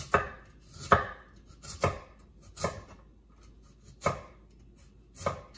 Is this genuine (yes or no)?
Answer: yes